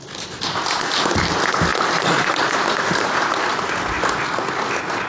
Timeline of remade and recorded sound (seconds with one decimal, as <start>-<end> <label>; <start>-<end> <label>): 0.0-5.1 recorded